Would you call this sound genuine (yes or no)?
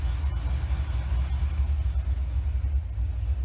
yes